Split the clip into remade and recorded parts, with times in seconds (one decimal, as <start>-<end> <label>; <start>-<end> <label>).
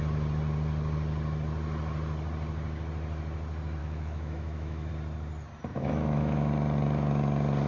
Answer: 0.0-3.8 recorded; 3.8-4.9 remade; 4.9-5.7 recorded; 5.7-6.5 remade; 6.5-7.7 recorded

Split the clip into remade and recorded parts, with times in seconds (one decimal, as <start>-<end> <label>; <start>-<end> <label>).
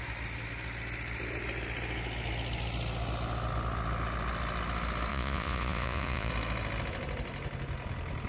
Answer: 0.0-5.1 recorded; 5.1-6.3 remade; 6.3-8.3 recorded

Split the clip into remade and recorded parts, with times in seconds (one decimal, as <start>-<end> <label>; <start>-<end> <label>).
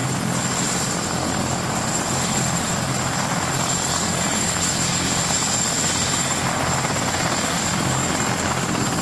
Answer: 0.0-9.0 recorded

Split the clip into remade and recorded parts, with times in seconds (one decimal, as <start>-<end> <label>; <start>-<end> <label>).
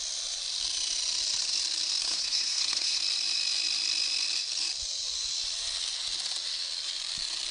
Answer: 0.0-2.0 recorded; 2.0-3.0 remade; 3.0-7.5 recorded